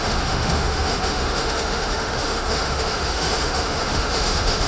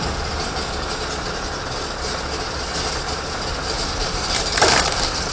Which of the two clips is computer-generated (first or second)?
first